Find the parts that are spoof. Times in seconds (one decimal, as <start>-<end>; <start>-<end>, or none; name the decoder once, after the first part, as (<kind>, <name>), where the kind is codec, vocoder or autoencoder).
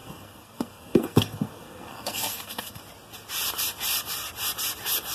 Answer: 0.0-2.8 (codec, SNAC)